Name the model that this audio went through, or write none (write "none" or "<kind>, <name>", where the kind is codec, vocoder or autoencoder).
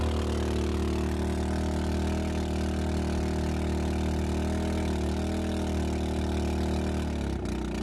none